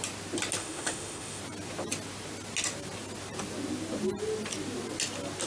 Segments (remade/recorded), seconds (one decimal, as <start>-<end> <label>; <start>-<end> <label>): 0.0-0.6 recorded; 0.6-1.4 remade; 1.4-5.5 recorded